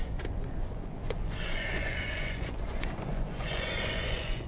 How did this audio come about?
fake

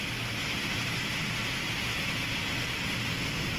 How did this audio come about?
real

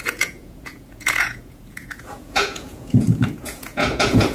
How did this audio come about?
fake